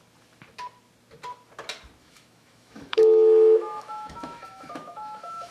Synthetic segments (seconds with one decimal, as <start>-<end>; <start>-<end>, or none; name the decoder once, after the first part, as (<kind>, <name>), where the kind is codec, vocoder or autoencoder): 2.0-5.5 (autoencoder, DAC-VAE)